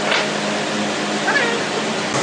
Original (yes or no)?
yes